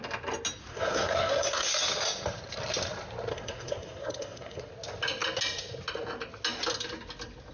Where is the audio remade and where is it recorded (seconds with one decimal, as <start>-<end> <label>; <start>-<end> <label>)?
0.0-0.7 recorded; 0.7-1.7 remade; 1.7-3.3 recorded; 3.3-4.7 remade; 4.7-7.5 recorded